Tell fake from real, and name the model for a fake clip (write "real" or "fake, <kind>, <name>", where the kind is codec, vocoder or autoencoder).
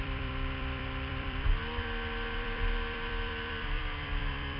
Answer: fake, vocoder, BigVGAN v2